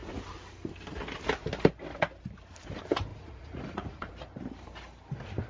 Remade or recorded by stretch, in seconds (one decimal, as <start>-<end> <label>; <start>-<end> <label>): 0.0-3.1 recorded; 3.1-4.1 remade; 4.1-5.5 recorded